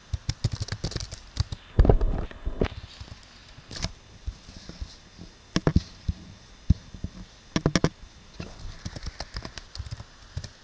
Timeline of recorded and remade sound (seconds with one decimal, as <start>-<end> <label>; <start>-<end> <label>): 0.0-3.4 recorded; 3.4-4.4 remade; 4.4-10.6 recorded